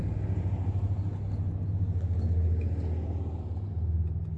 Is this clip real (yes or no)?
yes